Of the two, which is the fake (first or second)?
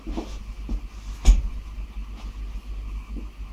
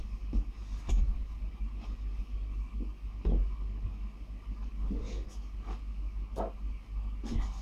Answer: second